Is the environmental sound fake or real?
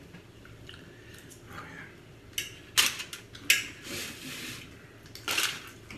real